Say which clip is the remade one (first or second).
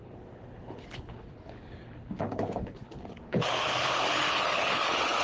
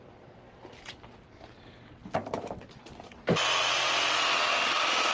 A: first